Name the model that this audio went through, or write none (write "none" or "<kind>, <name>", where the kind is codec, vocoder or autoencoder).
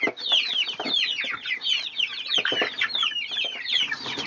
none